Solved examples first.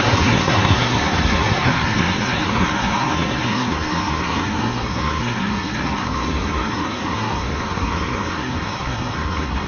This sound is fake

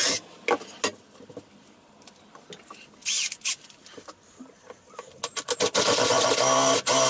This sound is real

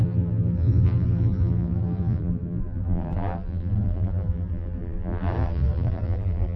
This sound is fake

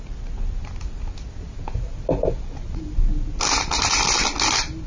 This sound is real